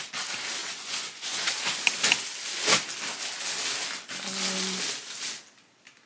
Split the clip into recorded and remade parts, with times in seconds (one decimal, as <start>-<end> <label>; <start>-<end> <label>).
0.0-0.6 recorded; 0.6-1.5 remade; 1.5-6.1 recorded